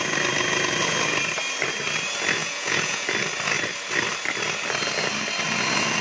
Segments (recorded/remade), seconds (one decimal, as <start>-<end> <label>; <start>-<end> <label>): 0.0-2.4 recorded; 2.4-3.1 remade; 3.1-6.0 recorded